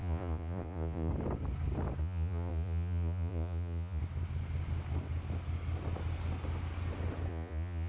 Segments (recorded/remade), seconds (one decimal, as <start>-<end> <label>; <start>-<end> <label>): 0.0-1.1 remade; 1.1-2.0 recorded; 2.0-4.0 remade; 4.0-7.3 recorded; 7.3-7.9 remade

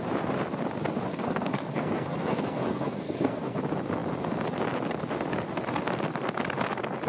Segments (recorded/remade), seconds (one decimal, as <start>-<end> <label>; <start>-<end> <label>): 0.0-1.1 recorded; 1.1-3.6 remade; 3.6-7.1 recorded

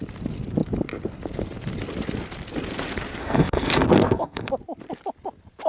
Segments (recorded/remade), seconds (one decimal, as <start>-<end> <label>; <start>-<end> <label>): 0.0-3.2 recorded; 3.2-4.5 remade; 4.5-5.7 recorded